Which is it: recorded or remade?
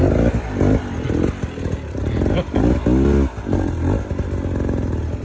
recorded